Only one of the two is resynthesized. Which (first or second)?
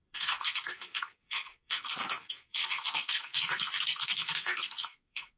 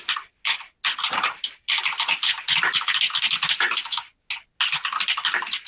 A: first